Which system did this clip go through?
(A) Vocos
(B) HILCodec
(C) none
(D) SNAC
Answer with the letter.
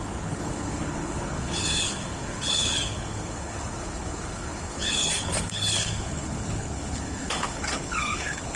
B